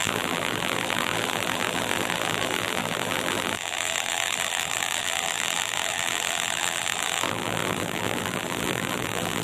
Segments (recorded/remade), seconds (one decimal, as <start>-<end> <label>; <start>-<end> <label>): 0.0-9.4 remade